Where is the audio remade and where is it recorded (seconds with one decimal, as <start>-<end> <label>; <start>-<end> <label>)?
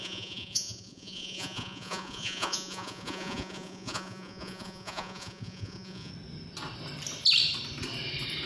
0.0-6.1 remade; 6.1-8.5 recorded